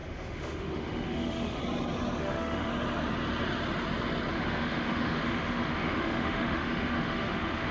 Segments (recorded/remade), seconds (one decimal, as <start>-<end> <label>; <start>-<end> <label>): 0.0-1.6 remade; 1.6-2.2 recorded; 2.2-2.7 remade; 2.7-4.3 recorded; 4.3-7.7 remade